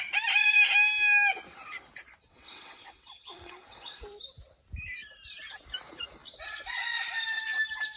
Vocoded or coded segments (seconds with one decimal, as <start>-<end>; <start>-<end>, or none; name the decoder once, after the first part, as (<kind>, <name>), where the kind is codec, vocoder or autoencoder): 2.2-4.0 (vocoder, WaveNeXt)